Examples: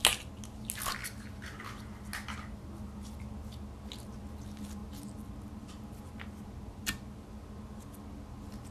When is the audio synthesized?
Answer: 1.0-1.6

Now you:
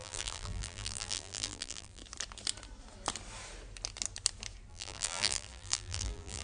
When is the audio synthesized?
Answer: 0.0-2.0; 4.7-6.4

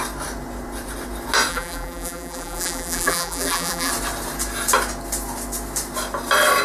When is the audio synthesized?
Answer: 1.5-3.9

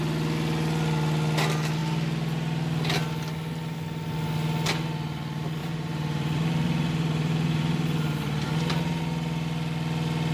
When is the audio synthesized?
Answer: 5.6-9.0

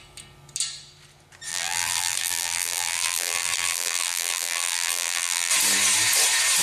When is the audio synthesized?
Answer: 1.5-5.5

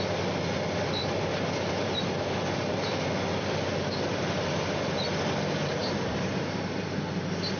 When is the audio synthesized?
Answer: 1.0-3.0; 5.8-7.0

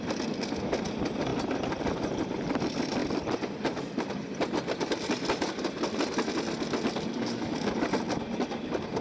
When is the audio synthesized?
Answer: 3.0-5.5